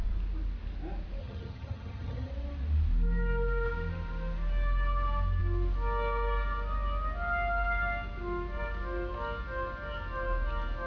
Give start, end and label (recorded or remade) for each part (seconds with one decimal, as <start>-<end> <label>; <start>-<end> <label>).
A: 0.0-1.2 recorded; 1.2-2.3 remade; 2.3-10.9 recorded